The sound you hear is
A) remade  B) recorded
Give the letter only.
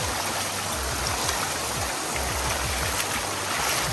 B